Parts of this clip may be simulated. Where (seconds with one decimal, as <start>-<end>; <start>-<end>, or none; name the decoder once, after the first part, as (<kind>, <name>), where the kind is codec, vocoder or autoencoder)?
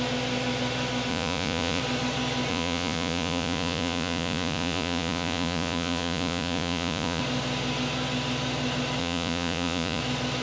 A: 1.1-1.8 (vocoder, Vocos); 2.5-7.2; 9.0-10.0